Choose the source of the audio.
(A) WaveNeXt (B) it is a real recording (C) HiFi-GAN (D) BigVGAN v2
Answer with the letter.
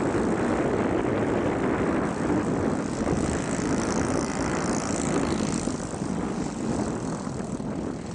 B